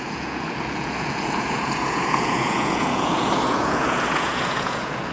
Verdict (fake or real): fake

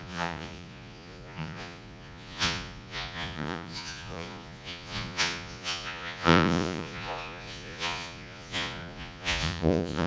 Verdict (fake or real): fake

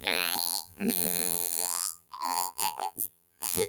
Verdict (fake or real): fake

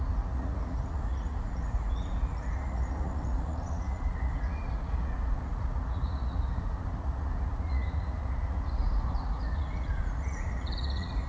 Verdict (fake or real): fake